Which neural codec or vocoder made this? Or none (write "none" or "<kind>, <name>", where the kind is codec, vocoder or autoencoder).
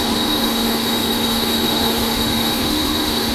autoencoder, DAC-VAE